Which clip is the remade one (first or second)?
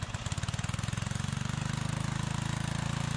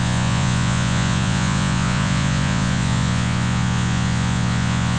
second